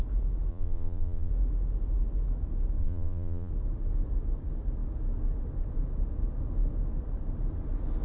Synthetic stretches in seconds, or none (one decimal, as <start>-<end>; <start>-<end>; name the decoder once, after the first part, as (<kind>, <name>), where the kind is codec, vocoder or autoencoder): 0.5-1.3 (vocoder, Vocos); 2.8-3.5